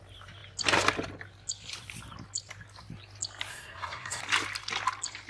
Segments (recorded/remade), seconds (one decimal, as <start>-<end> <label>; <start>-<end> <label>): 0.0-3.5 recorded; 3.5-4.2 remade; 4.2-5.3 recorded